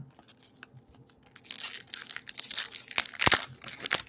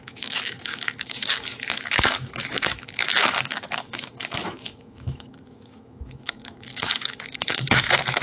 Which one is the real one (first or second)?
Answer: first